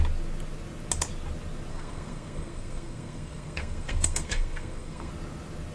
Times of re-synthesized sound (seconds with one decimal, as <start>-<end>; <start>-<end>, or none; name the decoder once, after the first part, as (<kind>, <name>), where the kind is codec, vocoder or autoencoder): 1.7-5.1 (codec, SNAC)